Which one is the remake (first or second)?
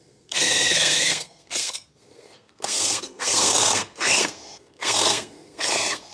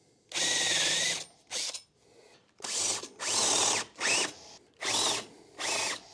first